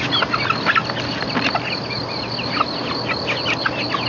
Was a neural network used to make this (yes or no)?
no